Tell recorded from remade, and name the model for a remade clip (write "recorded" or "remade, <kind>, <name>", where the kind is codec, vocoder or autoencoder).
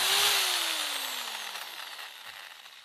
recorded